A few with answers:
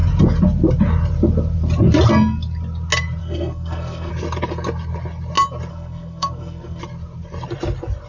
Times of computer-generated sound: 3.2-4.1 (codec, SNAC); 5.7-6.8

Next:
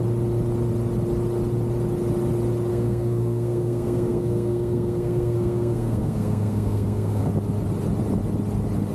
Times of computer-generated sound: 2.7-7.3 (codec, SNAC)